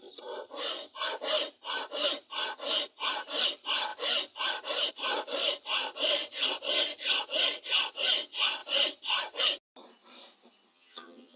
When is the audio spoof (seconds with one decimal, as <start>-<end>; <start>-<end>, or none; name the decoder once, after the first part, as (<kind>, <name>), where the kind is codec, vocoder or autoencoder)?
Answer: 10.7-11.4 (vocoder, HiFi-GAN)